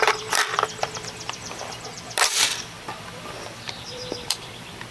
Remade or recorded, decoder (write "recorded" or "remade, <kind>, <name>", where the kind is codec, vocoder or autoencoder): remade, vocoder, BigVGAN v2